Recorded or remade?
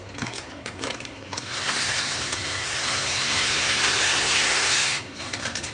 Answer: remade